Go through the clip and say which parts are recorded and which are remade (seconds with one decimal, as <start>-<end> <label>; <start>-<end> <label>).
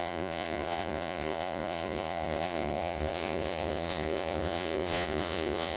0.0-5.8 remade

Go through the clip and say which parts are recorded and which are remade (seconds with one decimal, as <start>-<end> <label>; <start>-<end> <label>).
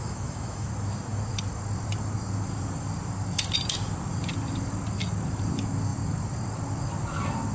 0.0-0.7 remade; 0.7-7.5 recorded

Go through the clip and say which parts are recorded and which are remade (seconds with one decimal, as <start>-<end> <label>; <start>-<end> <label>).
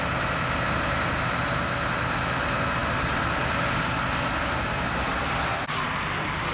0.0-6.5 recorded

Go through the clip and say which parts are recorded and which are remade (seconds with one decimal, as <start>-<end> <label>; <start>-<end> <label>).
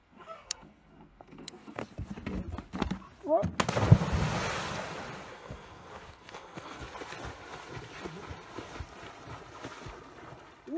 0.0-1.8 remade; 1.8-5.3 recorded; 5.3-6.8 remade; 6.8-10.8 recorded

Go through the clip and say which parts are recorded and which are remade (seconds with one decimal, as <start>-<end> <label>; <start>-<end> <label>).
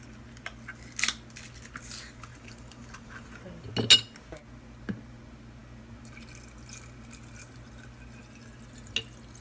0.0-2.3 recorded; 2.3-3.5 remade; 3.5-9.4 recorded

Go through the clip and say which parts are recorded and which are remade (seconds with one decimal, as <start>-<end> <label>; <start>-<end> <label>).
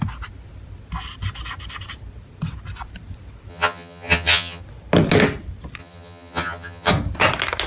0.0-3.5 recorded; 3.5-4.6 remade; 4.6-5.8 recorded; 5.8-6.9 remade; 6.9-7.7 recorded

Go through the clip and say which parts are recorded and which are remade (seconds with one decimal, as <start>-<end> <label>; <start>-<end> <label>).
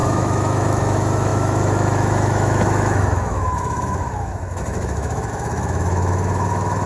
0.0-6.9 remade